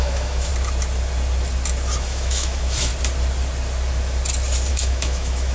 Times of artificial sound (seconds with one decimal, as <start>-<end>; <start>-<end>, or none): 0.0-0.5; 2.0-2.9; 4.7-5.5